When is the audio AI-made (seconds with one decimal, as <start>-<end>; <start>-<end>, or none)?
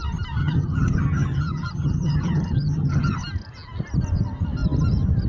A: 0.4-3.2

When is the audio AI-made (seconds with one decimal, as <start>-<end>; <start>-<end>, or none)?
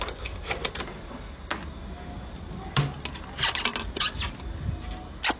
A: none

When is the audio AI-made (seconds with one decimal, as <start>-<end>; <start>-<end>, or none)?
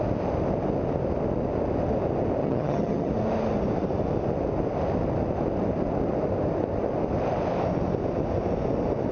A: 2.4-3.1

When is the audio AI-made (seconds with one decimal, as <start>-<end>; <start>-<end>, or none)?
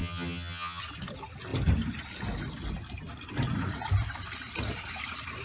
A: 0.0-0.8